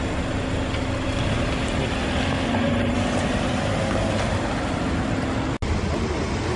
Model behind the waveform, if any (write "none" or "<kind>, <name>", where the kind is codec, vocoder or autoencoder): none